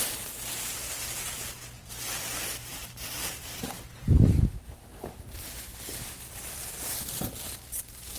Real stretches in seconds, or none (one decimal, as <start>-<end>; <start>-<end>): none